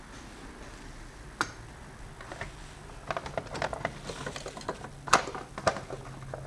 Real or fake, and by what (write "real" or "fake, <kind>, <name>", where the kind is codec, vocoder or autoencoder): real